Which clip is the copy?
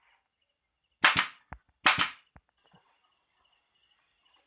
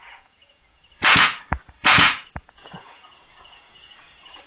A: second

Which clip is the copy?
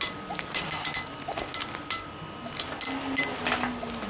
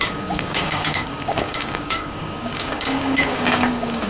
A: second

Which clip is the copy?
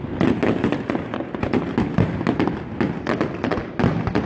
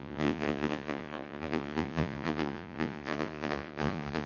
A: second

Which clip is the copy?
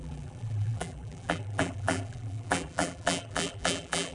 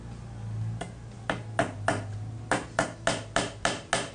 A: first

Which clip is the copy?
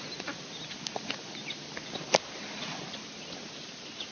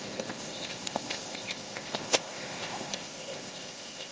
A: second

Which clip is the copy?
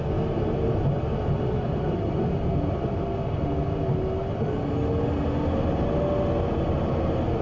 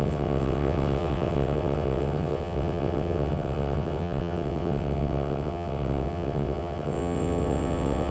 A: second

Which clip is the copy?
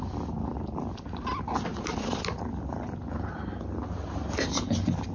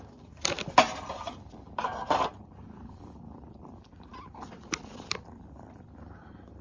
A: second